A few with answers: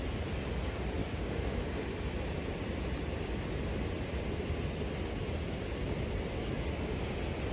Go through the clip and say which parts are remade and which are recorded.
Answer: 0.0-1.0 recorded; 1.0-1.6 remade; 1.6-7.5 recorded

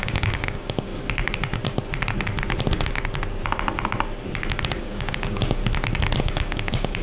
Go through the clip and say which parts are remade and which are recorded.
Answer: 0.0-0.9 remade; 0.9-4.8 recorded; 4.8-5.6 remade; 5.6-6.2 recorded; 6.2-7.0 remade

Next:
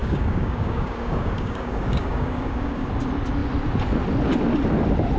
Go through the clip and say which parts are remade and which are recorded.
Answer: 0.0-2.9 remade; 2.9-5.2 recorded

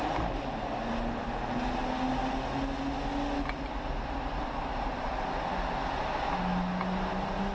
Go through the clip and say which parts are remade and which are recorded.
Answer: 0.0-7.5 recorded